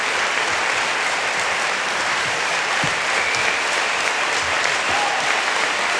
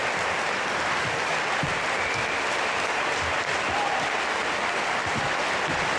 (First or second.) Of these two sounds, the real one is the second